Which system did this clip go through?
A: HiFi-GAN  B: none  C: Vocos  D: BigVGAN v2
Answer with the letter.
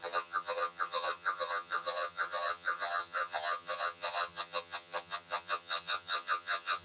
A